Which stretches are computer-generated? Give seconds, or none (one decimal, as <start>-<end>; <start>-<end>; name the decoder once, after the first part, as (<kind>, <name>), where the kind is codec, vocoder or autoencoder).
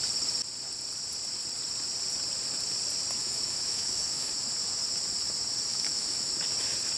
3.2-4.3 (autoencoder, DAC-VAE); 5.7-6.3